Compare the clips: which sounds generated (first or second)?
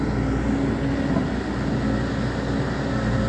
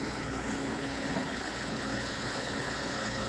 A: second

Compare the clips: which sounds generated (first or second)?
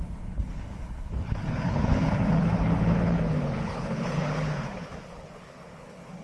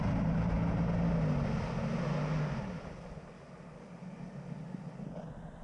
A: first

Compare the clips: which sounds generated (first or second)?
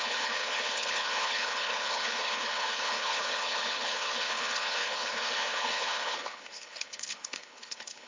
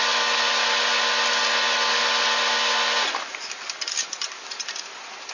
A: first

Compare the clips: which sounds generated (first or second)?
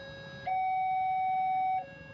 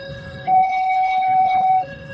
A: second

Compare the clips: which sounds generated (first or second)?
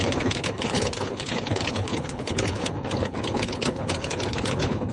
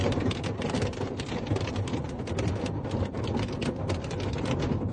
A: first